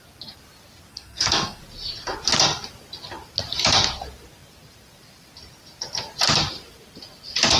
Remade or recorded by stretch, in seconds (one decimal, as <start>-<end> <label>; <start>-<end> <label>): 0.0-0.9 recorded; 0.9-1.6 remade; 1.6-7.6 recorded